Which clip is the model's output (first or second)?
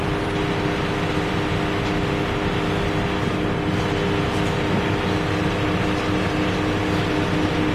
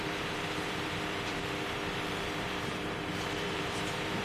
second